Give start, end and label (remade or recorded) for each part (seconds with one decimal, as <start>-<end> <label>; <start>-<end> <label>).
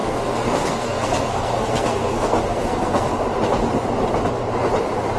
0.0-3.1 remade; 3.1-5.2 recorded